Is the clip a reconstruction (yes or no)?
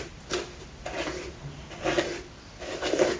no